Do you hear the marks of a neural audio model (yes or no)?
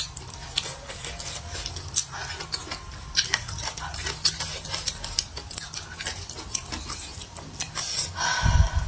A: no